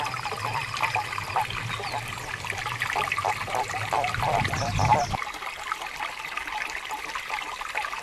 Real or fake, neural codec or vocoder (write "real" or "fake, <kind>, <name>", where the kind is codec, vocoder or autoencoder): real